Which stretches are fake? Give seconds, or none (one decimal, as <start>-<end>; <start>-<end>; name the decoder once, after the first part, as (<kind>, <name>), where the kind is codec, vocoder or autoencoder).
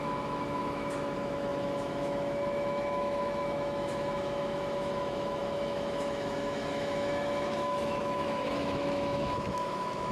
0.0-10.1 (autoencoder, DAC-VAE)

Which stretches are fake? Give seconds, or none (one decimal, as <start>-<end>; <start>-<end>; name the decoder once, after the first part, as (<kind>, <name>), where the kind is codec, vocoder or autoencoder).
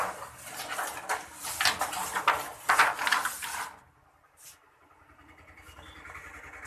none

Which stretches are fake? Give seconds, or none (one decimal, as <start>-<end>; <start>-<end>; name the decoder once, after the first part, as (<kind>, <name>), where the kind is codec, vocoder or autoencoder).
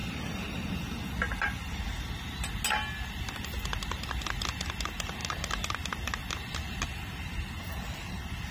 none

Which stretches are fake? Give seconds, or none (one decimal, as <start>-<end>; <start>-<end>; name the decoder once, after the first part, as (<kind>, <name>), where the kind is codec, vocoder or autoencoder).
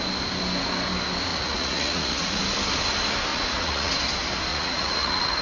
1.3-2.4 (vocoder, Vocos); 3.3-3.9; 4.5-5.4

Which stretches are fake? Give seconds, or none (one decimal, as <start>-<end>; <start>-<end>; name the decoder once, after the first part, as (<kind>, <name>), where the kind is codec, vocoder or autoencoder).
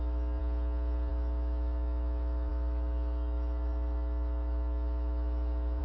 0.0-0.4 (autoencoder, DAC-VAE); 1.1-5.8